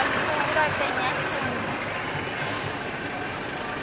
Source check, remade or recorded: recorded